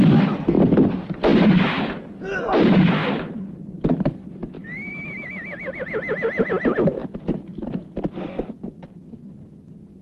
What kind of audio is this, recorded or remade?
remade